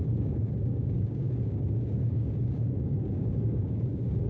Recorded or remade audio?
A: remade